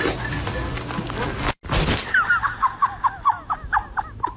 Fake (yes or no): no